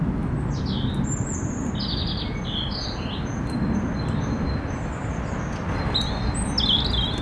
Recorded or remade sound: recorded